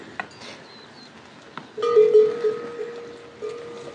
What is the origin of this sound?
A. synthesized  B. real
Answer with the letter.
B